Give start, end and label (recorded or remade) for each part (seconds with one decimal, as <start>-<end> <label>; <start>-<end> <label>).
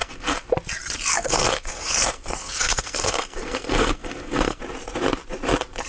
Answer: 0.0-0.5 remade; 0.5-1.1 recorded; 1.1-4.6 remade; 4.6-5.9 recorded